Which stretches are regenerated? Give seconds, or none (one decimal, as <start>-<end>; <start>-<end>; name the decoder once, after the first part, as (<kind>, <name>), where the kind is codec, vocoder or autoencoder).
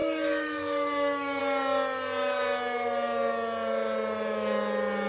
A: 0.0-1.4 (autoencoder, DAC-VAE)